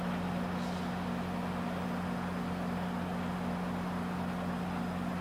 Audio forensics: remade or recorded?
recorded